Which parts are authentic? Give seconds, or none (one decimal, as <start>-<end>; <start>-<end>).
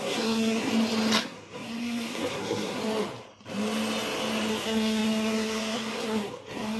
0.7-1.2; 2.8-4.5